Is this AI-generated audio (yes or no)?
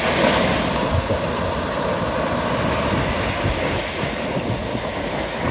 no